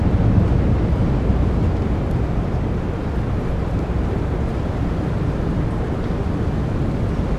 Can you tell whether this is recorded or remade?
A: recorded